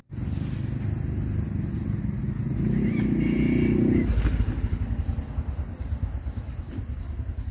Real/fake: real